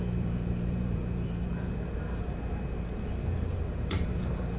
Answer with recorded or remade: remade